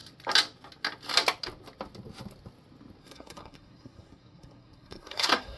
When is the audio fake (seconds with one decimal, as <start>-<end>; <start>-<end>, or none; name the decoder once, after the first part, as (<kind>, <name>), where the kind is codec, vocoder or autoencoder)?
3.0-5.6 (codec, SNAC)